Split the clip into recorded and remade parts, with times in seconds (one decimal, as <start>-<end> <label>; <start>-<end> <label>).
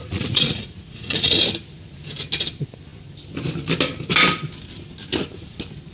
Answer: 0.0-1.4 remade; 1.4-5.9 recorded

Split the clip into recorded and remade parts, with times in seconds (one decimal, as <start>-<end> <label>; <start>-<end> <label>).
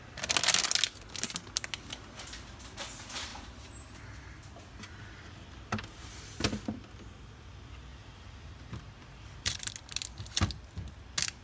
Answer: 0.0-3.3 recorded; 3.3-4.0 remade; 4.0-7.9 recorded; 7.9-9.7 remade; 9.7-11.4 recorded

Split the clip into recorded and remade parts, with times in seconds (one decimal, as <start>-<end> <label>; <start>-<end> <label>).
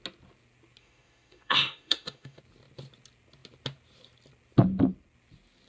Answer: 0.0-0.8 recorded; 0.8-2.4 remade; 2.4-5.7 recorded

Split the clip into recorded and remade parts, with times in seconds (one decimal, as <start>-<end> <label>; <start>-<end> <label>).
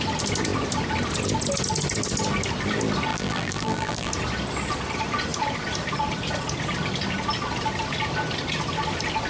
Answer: 0.0-3.1 recorded; 3.1-4.1 remade; 4.1-9.3 recorded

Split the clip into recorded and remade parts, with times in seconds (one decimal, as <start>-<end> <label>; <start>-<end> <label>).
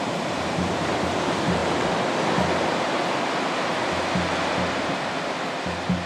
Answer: 0.0-1.6 remade; 1.6-4.7 recorded; 4.7-6.1 remade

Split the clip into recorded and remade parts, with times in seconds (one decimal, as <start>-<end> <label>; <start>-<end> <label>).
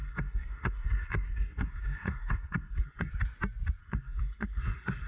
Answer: 0.0-3.1 remade; 3.1-3.8 recorded; 3.8-5.1 remade